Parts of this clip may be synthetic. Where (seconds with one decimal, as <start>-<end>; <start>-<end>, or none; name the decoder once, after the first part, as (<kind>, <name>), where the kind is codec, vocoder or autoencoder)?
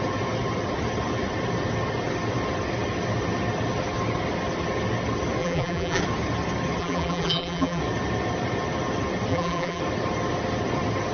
5.4-6.0 (vocoder, BigVGAN v2); 6.8-7.8; 9.3-9.8